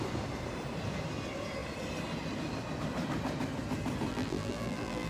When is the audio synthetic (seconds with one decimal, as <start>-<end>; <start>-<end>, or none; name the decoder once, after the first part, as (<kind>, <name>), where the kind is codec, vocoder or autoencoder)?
4.1-5.1 (vocoder, BigVGAN v2)